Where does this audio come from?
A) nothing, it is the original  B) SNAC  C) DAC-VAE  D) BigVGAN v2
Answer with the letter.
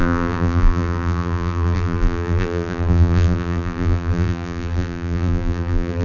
D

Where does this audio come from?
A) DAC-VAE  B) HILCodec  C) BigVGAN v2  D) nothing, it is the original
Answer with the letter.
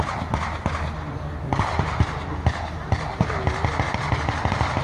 D